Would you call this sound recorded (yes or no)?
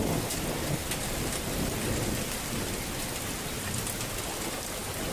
yes